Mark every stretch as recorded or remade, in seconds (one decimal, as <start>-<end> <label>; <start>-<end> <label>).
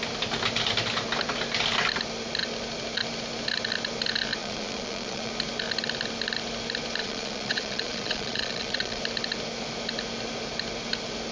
0.0-4.4 recorded; 4.4-5.3 remade; 5.3-7.0 recorded; 7.0-9.0 remade; 9.0-11.3 recorded